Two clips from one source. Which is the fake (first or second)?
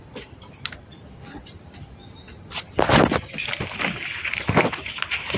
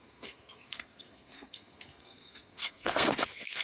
second